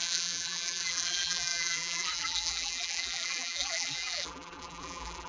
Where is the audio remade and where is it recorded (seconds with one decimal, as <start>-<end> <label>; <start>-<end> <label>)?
0.0-5.3 remade